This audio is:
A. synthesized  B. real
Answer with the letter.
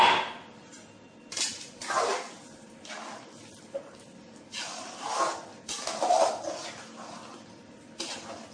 B